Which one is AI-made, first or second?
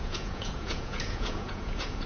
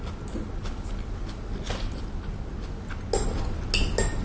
first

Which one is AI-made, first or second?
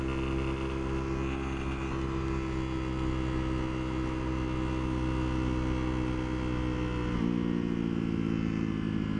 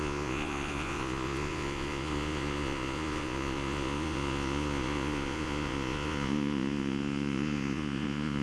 second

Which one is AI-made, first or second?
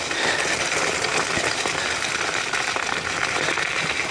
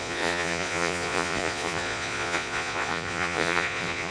second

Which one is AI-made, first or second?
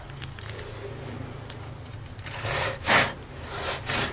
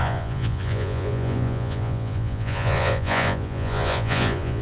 second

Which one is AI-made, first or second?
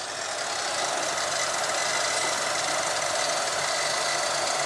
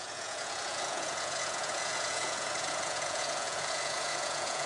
second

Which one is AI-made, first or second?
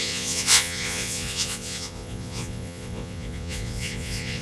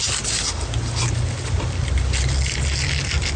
first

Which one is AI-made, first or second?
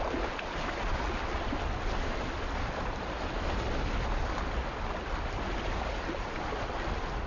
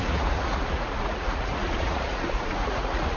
second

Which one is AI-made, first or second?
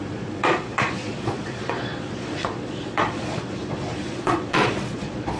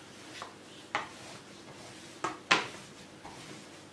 first